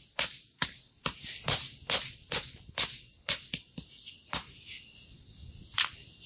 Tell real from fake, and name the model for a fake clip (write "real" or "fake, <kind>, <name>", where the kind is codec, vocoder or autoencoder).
real